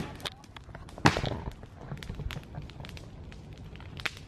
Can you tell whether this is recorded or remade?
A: recorded